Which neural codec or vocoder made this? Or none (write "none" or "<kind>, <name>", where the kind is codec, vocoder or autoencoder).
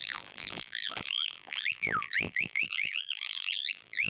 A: vocoder, BigVGAN v2